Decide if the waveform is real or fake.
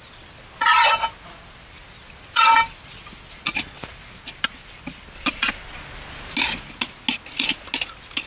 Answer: real